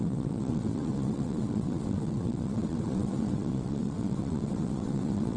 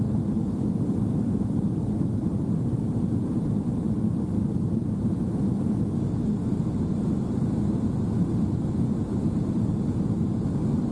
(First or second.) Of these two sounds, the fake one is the first